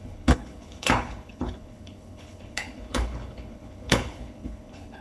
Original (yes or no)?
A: no